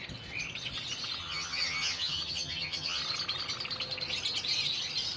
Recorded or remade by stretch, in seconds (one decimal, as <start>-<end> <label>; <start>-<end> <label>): 0.0-1.2 recorded; 1.2-3.0 remade; 3.0-5.2 recorded